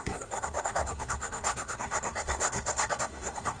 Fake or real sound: fake